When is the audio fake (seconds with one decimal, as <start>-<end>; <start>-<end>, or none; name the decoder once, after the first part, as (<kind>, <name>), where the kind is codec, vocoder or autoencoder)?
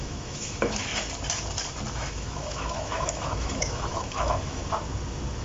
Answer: 0.0-0.9 (autoencoder, DAC-VAE); 1.9-4.6